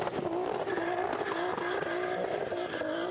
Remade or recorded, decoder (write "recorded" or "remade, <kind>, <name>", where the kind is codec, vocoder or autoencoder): recorded